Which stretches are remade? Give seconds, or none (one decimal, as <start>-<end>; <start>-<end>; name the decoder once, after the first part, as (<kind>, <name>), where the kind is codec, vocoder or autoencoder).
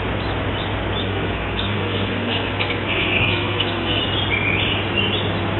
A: 1.0-4.0 (codec, SNAC)